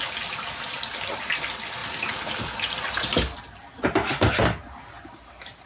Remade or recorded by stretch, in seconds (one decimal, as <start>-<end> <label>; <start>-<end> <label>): 0.0-5.7 recorded